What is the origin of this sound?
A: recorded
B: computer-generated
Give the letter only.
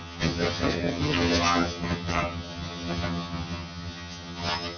B